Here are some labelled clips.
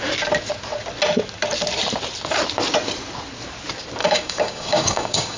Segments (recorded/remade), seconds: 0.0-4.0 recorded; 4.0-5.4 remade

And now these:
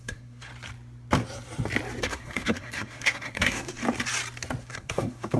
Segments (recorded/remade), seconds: 0.0-0.5 remade; 0.5-2.0 recorded; 2.0-3.8 remade; 3.8-4.6 recorded; 4.6-5.4 remade

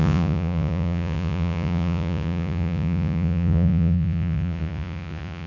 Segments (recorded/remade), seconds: 0.0-5.5 remade

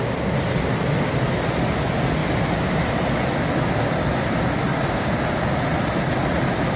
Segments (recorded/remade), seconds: 0.0-6.8 recorded

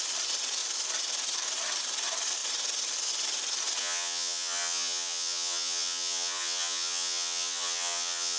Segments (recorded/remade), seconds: 0.0-3.8 recorded; 3.8-8.4 remade

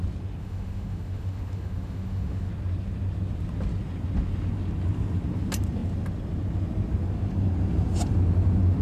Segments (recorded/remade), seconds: 0.0-0.4 recorded; 0.4-2.5 remade; 2.5-8.8 recorded

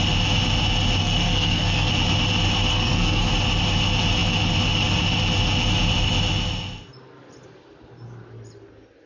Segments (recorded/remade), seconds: 0.0-1.0 recorded; 1.0-1.9 remade; 1.9-2.7 recorded; 2.7-3.3 remade; 3.3-9.1 recorded